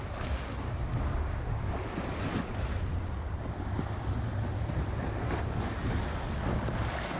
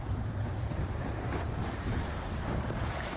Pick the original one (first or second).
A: first